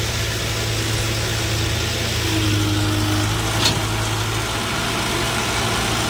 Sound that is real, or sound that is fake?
real